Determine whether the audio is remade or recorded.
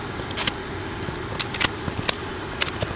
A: recorded